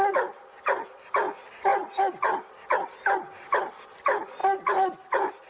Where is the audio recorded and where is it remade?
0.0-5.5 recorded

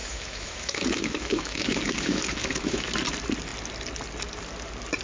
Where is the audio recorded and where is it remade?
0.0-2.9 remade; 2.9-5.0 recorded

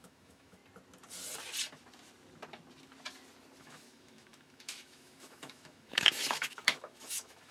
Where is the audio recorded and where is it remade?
0.0-0.6 remade; 0.6-3.6 recorded; 3.6-7.5 remade

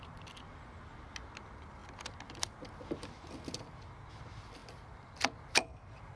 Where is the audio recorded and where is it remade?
0.0-6.2 recorded

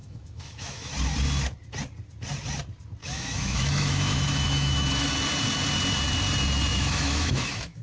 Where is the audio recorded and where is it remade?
0.0-0.9 remade; 0.9-3.0 recorded; 3.0-5.1 remade; 5.1-6.7 recorded; 6.7-7.8 remade

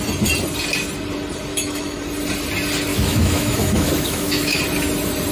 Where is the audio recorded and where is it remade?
0.0-1.5 recorded; 1.5-2.0 remade; 2.0-2.9 recorded; 2.9-4.6 remade; 4.6-5.3 recorded